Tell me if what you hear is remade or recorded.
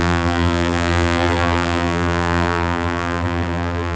remade